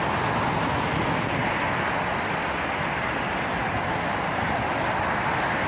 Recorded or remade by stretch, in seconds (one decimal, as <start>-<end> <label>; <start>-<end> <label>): 0.0-5.7 recorded